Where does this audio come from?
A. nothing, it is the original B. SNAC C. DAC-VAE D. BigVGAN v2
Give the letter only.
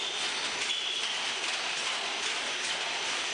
A